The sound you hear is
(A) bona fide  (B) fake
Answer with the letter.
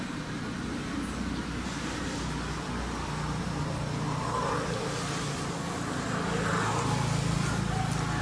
A